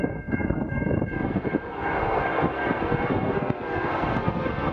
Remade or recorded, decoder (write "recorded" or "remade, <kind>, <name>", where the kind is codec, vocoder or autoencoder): remade, codec, SNAC